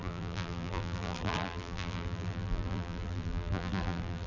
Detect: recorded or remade remade